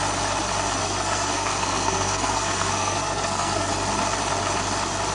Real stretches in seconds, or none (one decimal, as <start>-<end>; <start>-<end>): 0.0-0.8; 3.7-5.1